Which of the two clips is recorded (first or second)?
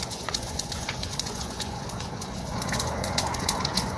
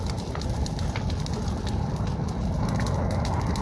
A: second